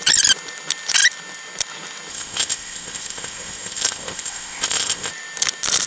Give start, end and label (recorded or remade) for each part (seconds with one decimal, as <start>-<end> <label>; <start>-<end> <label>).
0.0-2.1 recorded; 2.1-5.1 remade; 5.1-5.9 recorded